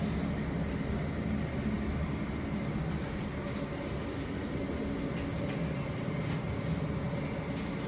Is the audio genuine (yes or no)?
yes